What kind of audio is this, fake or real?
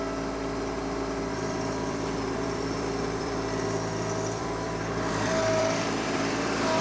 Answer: fake